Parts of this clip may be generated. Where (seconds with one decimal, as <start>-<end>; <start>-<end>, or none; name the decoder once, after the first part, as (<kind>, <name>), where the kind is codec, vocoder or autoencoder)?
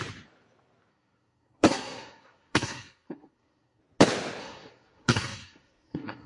0.9-3.8 (codec, SNAC); 4.4-6.3